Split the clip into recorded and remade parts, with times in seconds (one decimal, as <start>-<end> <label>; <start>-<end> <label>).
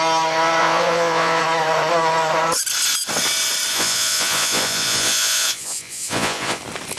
0.0-0.6 recorded; 0.6-1.4 remade; 1.4-3.7 recorded; 3.7-6.6 remade; 6.6-7.0 recorded